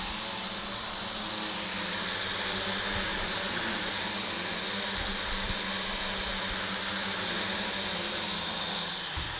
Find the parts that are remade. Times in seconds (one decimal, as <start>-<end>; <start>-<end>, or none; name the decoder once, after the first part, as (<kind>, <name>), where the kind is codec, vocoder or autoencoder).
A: 3.1-3.9 (vocoder, BigVGAN v2)